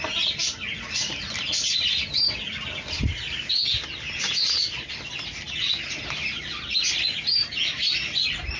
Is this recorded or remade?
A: recorded